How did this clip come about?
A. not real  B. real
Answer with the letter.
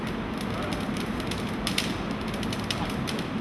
B